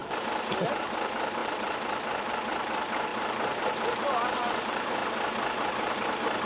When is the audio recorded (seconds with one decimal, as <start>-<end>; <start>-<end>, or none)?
0.0-0.8; 5.0-5.7